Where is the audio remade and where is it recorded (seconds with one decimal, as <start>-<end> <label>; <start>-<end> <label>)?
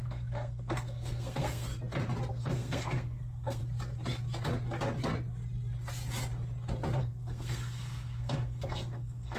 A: 0.0-1.7 remade; 1.7-2.3 recorded; 2.3-3.6 remade; 3.6-7.0 recorded; 7.0-9.4 remade